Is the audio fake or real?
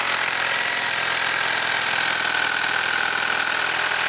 real